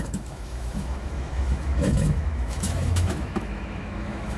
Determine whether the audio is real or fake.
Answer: fake